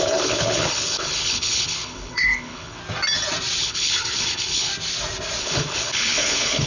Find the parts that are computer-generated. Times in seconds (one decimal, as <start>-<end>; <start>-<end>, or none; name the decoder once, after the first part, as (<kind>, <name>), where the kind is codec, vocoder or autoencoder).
0.0-2.8 (codec, HILCodec); 3.6-4.7; 5.4-6.7